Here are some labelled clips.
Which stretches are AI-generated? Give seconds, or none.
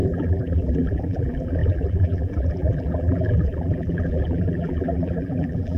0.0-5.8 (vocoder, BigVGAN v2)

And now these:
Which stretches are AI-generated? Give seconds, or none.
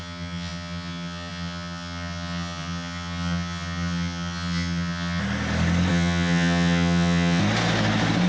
0.0-5.2 (vocoder, HiFi-GAN); 5.9-7.4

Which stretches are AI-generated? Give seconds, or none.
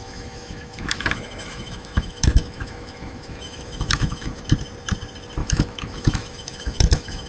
0.0-4.4 (autoencoder, DAC-VAE); 5.4-7.3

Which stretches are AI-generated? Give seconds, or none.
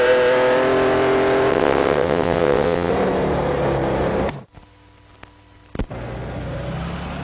1.5-2.9 (vocoder, WaveNeXt)